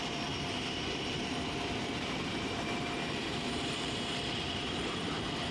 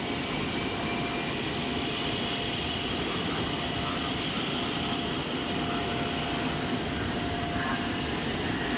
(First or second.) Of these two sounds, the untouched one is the second